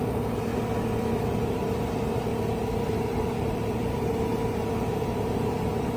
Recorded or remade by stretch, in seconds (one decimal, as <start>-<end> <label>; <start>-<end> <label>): 0.0-0.5 remade; 0.5-1.1 recorded; 1.1-2.3 remade; 2.3-2.8 recorded; 2.8-4.1 remade; 4.1-4.9 recorded; 4.9-6.0 remade